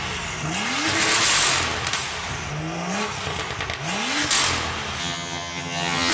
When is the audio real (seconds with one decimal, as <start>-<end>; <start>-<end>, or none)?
0.0-5.0